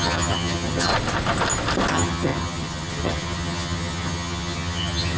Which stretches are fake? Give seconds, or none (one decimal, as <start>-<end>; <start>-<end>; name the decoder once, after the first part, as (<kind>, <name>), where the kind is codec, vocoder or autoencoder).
0.0-0.9 (vocoder, HiFi-GAN); 1.9-5.2